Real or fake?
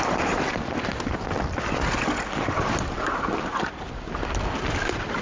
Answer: real